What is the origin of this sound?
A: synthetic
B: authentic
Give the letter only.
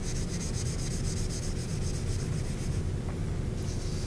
B